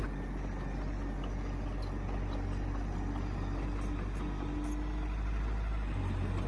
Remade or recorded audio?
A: recorded